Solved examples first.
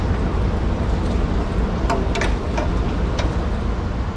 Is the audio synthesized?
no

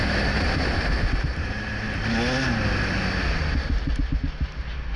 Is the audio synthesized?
no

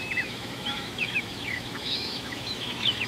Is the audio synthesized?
yes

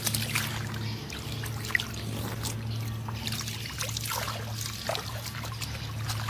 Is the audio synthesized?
no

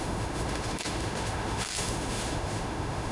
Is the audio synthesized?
yes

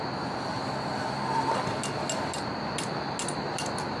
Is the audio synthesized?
no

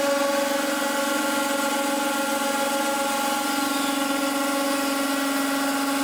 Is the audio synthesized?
no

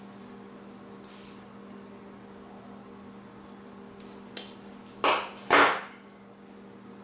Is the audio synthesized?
no